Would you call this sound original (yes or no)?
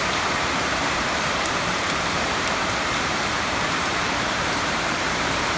no